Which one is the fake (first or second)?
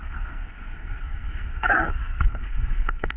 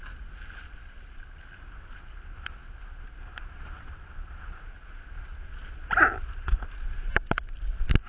first